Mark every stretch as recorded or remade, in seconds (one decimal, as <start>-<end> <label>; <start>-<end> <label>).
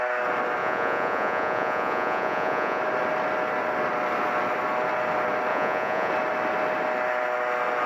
0.0-0.6 recorded; 0.6-2.8 remade; 2.8-5.5 recorded; 5.5-6.1 remade; 6.1-7.9 recorded